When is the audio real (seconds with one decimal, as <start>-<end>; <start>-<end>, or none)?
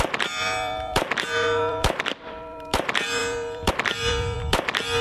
none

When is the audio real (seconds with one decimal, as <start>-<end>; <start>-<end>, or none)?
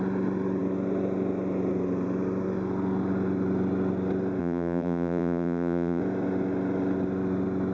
0.0-4.4; 6.0-7.7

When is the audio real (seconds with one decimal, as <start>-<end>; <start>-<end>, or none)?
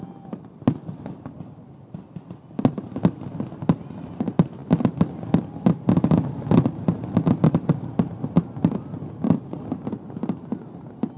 0.0-4.6; 5.4-11.2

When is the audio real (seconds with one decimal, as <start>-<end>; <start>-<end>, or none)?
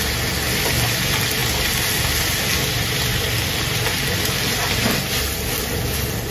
0.0-6.3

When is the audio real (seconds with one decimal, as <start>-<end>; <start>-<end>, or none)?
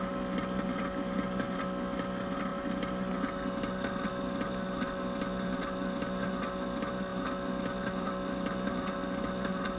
0.0-9.8